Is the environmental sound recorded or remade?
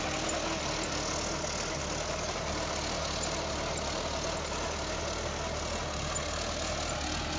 recorded